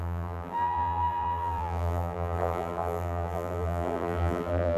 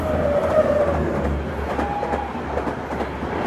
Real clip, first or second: second